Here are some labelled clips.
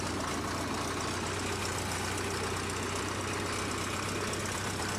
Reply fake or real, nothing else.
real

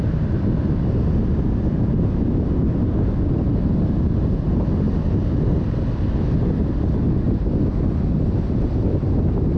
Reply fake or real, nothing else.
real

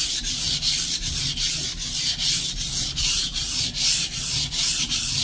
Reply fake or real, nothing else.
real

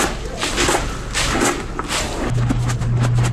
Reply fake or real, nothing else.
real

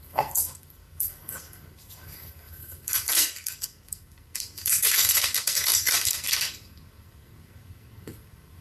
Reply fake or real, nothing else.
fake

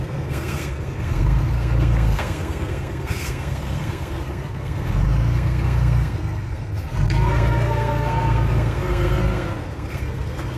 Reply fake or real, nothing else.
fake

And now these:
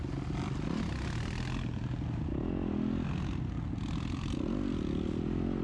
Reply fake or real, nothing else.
real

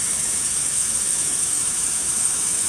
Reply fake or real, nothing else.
fake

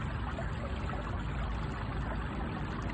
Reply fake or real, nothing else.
real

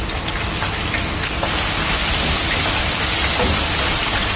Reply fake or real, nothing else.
real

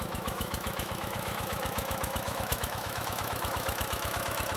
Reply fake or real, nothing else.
fake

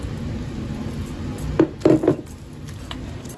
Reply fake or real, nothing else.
real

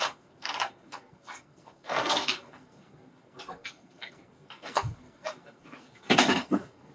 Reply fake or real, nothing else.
fake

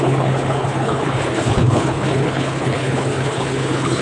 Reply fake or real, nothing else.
fake